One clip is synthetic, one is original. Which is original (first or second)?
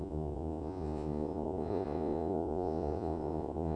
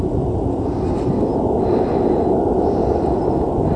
second